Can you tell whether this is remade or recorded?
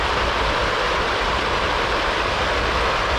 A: recorded